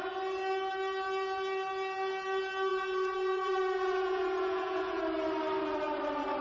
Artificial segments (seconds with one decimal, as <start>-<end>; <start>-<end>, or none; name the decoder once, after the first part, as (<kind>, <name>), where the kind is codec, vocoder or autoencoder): 2.7-5.0 (vocoder, Vocos)